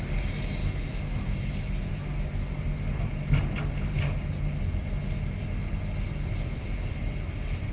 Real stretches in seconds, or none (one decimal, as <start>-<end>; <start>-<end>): 0.0-0.6; 1.9-7.7

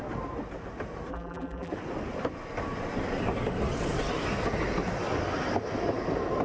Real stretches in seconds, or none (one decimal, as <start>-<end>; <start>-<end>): 0.0-1.1; 1.7-6.4

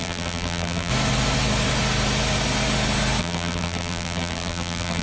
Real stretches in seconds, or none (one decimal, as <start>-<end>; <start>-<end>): 0.9-3.2

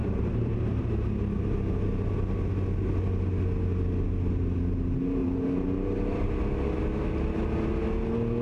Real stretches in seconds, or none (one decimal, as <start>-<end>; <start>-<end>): 0.9-5.2; 6.3-8.4

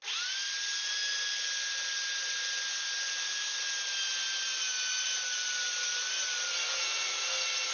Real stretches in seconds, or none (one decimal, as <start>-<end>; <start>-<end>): 0.0-7.7

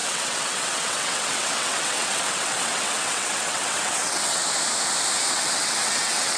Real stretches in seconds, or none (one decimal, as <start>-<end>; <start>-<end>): 4.4-5.3